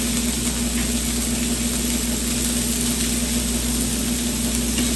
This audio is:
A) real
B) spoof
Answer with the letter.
A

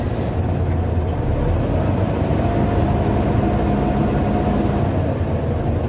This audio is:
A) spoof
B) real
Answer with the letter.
B